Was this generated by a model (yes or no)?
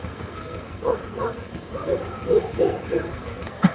yes